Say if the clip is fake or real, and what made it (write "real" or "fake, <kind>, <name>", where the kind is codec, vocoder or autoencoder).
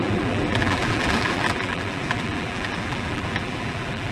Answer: fake, vocoder, BigVGAN v2